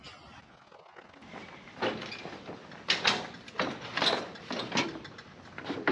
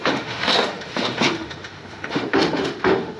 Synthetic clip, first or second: second